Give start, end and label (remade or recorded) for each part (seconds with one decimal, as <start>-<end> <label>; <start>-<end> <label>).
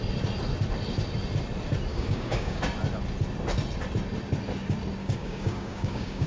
0.0-1.9 recorded; 1.9-2.6 remade; 2.6-5.0 recorded; 5.0-6.3 remade